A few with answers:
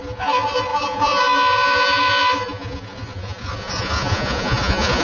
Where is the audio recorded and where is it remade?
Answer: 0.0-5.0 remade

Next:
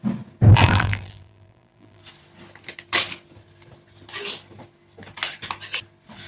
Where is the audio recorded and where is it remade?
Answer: 0.0-0.5 recorded; 0.5-2.0 remade; 2.0-6.3 recorded

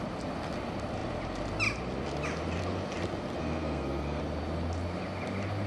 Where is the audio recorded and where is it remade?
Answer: 0.0-3.4 recorded; 3.4-4.2 remade; 4.2-5.7 recorded

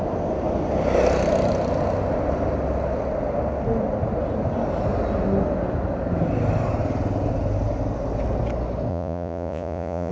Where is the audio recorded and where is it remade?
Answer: 0.0-8.9 recorded; 8.9-10.1 remade

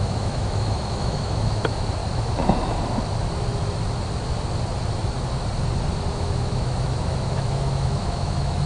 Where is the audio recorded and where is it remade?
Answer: 0.0-2.0 remade; 2.0-6.1 recorded; 6.1-8.7 remade

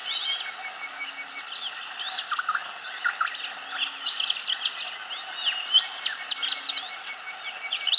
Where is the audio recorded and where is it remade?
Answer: 0.0-8.0 recorded